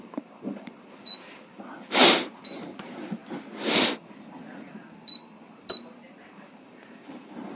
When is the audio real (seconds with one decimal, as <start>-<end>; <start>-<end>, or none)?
3.2-6.2